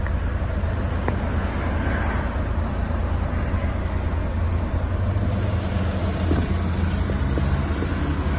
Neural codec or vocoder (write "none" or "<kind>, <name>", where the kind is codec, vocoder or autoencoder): none